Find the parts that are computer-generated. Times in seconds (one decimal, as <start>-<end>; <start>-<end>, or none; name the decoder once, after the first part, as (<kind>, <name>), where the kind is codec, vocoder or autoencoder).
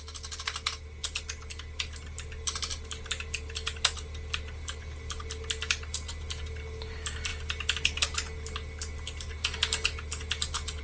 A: none